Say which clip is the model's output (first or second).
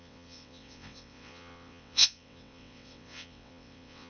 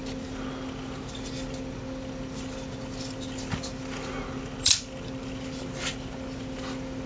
first